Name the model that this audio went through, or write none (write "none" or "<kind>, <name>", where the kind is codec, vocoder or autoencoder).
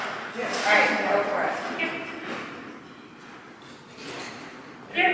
none